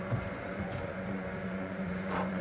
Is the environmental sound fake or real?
fake